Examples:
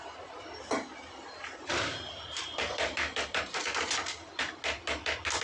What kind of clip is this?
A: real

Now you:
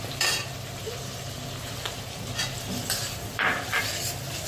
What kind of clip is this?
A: fake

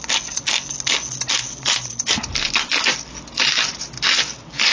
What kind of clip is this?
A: real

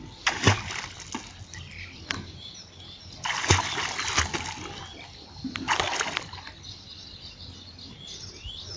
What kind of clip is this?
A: real